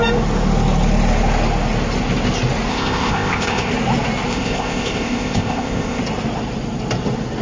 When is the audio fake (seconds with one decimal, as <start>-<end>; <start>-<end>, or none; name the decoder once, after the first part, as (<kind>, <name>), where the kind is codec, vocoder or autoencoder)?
2.7-3.7 (codec, ZipCodec); 4.3-6.0